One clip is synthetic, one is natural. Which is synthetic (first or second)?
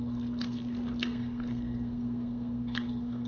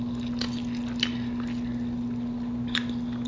first